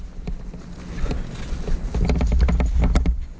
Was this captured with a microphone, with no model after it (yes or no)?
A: yes